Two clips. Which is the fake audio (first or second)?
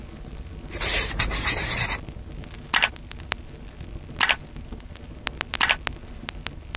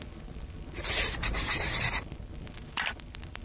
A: second